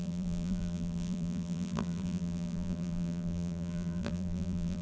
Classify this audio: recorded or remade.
remade